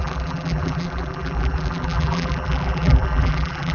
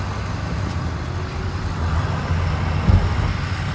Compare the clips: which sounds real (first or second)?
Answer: second